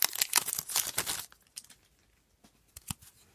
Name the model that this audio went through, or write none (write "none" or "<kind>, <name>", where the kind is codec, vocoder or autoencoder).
none